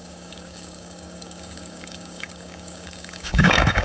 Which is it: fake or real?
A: fake